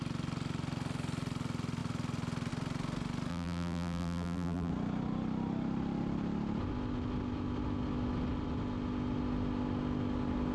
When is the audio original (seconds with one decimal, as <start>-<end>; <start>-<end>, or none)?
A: 0.0-3.3; 4.7-10.5